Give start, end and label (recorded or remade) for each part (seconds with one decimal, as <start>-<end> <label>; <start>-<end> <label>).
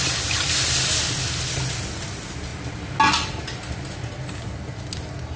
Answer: 0.0-5.4 recorded